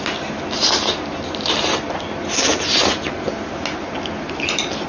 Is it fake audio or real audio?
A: real